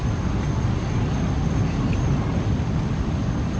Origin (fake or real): real